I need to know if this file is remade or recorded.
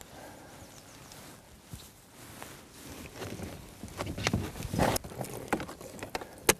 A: recorded